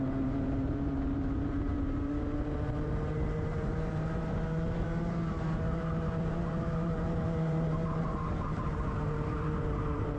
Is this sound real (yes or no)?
no